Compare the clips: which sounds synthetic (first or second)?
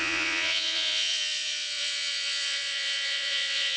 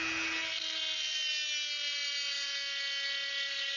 first